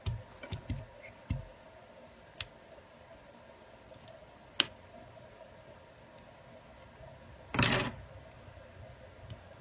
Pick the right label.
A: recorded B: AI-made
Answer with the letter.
A